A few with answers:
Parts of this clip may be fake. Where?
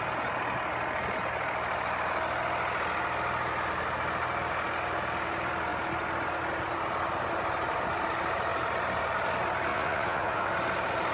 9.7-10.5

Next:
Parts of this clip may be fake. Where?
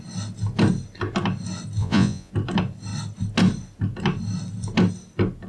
1.8-2.3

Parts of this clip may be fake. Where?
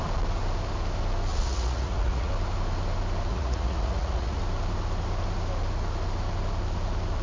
1.3-2.3; 3.3-4.4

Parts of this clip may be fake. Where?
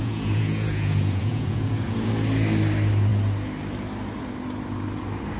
0.0-2.1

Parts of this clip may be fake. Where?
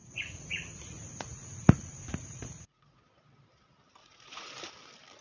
0.0-3.0; 4.0-4.5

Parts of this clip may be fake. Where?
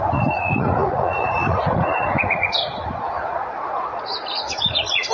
0.0-5.1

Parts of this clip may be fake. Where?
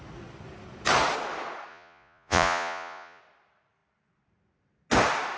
1.7-3.2